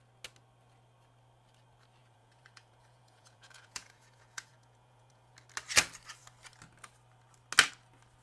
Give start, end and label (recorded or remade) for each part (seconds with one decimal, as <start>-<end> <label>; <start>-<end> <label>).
0.0-2.0 recorded; 2.0-5.3 remade; 5.3-8.2 recorded